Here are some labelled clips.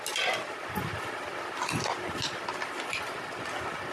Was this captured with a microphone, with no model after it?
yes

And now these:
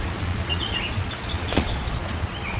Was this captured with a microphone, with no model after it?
no